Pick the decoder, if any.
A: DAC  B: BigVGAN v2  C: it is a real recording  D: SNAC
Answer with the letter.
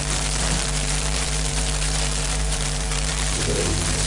B